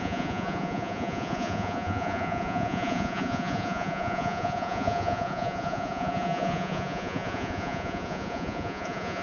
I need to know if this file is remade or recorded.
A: remade